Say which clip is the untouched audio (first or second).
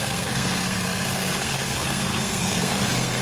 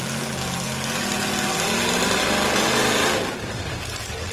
second